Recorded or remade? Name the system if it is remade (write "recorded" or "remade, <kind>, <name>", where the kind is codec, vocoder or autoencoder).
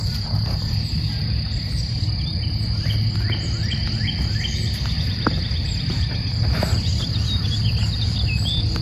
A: recorded